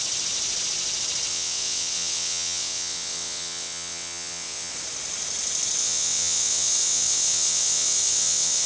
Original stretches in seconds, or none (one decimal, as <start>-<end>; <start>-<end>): 0.0-1.3; 4.7-5.8